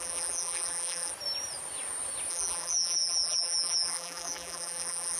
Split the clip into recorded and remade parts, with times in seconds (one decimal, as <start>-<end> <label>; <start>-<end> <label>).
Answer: 0.0-1.1 remade; 1.1-2.3 recorded; 2.3-5.2 remade